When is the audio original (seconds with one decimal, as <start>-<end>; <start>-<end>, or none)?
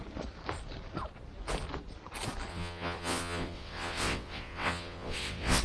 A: 0.0-2.5